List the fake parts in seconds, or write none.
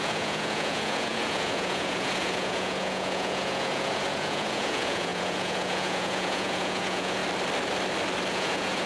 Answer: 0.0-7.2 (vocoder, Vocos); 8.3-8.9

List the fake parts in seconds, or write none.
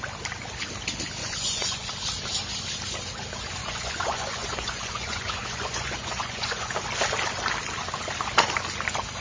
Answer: 1.2-1.9 (vocoder, Vocos); 3.6-6.7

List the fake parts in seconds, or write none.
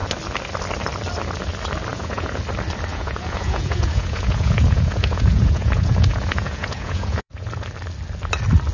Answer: 1.9-2.4 (vocoder, Vocos); 2.9-7.7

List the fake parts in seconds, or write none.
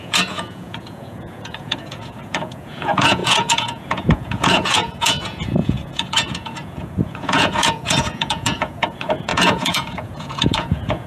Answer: 0.0-11.1 (vocoder, Vocos)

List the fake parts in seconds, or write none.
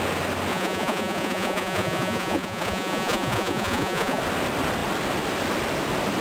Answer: 0.5-4.2 (vocoder, Vocos)